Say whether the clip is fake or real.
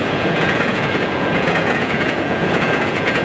fake